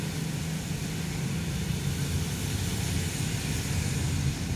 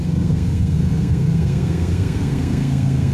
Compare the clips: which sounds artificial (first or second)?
second